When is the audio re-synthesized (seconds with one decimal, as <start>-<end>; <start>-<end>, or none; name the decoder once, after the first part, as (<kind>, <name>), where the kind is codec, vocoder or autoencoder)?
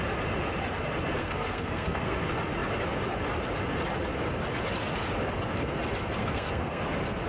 1.2-2.2 (codec, SNAC); 6.2-6.8